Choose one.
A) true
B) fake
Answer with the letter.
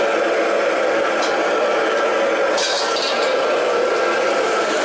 A